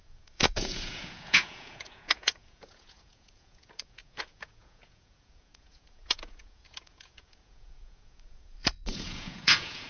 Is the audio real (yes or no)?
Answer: no